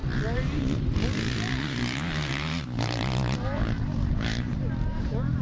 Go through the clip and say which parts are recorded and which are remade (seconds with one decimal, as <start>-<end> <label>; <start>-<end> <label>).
0.0-5.4 remade